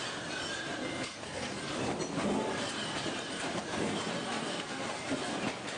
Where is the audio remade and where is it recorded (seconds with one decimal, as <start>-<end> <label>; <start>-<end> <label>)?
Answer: 0.0-0.9 recorded; 0.9-1.6 remade; 1.6-4.4 recorded; 4.4-4.9 remade; 4.9-5.8 recorded